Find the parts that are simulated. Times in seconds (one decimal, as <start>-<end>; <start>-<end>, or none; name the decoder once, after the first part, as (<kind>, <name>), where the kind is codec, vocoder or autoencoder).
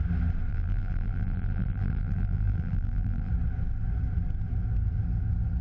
0.5-3.3 (vocoder, BigVGAN v2)